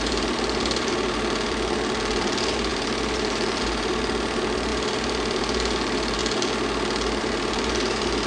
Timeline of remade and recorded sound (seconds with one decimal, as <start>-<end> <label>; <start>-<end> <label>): 0.0-6.2 remade; 6.2-7.2 recorded; 7.2-8.3 remade